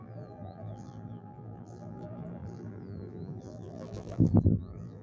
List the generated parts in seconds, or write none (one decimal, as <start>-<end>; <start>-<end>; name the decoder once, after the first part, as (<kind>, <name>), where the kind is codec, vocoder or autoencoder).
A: 0.0-5.0 (vocoder, BigVGAN v2)